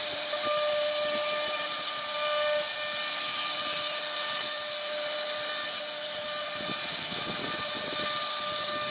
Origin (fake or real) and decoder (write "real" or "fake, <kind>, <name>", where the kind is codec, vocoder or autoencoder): real